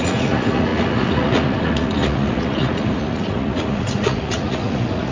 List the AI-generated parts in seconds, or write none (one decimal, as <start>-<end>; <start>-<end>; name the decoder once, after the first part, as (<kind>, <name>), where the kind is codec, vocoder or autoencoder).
0.0-5.1 (vocoder, Vocos)